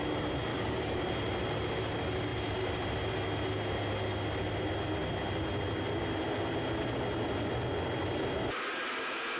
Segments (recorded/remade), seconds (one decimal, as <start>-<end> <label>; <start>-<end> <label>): 0.0-0.5 recorded; 0.5-1.0 remade; 1.0-9.4 recorded